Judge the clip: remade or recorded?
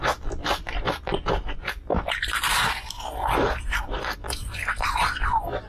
recorded